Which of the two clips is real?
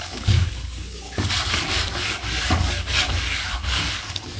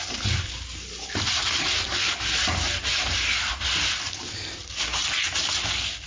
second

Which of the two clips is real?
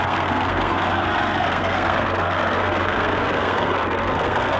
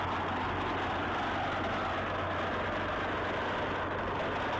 second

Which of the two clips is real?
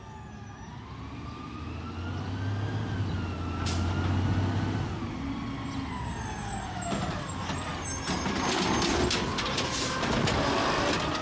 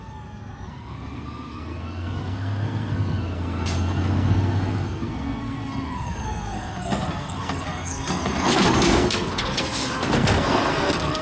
first